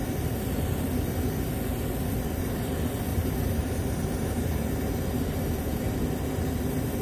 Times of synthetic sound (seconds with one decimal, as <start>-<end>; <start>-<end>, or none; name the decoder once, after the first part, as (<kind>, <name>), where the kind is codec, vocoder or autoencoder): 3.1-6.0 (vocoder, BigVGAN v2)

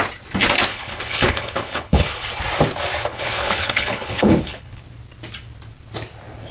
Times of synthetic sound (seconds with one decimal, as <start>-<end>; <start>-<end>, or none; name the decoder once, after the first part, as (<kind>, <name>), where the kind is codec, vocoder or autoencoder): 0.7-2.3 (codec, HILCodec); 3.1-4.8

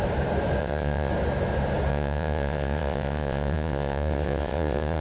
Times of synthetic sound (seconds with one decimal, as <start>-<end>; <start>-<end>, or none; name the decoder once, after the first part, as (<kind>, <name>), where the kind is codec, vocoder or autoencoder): 0.6-1.1 (vocoder, WaveNeXt); 1.9-5.0

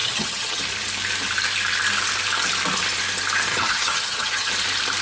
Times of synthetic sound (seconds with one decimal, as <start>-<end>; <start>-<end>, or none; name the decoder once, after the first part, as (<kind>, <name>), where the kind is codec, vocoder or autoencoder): 0.0-0.6 (vocoder, HiFi-GAN); 3.5-4.5